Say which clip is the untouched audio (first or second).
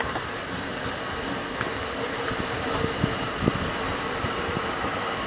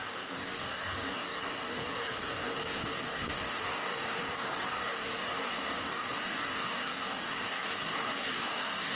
first